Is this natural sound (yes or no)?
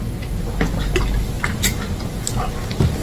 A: yes